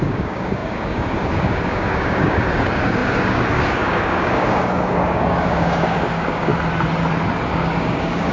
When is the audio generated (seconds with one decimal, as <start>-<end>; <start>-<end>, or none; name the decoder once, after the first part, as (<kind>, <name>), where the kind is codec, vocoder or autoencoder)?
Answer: 0.0-6.5 (codec, DAC); 7.5-8.3